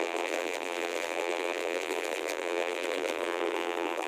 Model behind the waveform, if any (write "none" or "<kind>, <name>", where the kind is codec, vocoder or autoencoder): vocoder, BigVGAN v2